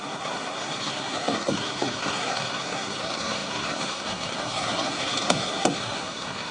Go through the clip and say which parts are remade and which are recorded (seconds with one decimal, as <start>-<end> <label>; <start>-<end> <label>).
0.0-6.5 remade